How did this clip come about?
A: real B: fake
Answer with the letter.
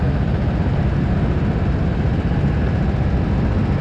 A